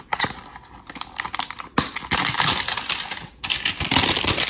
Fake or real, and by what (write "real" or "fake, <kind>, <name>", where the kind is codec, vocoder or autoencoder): real